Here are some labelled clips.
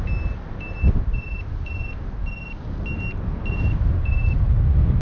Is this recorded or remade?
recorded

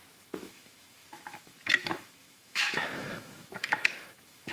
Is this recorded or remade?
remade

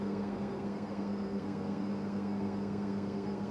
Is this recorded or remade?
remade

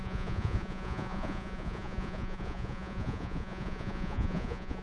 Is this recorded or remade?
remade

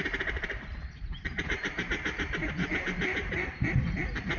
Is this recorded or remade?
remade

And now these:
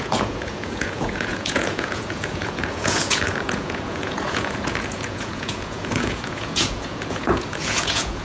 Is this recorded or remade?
remade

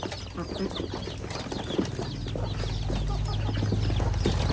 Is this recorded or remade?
recorded